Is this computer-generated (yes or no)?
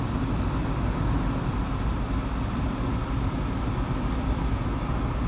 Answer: no